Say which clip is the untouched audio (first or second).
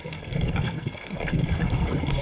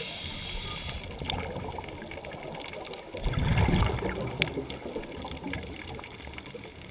second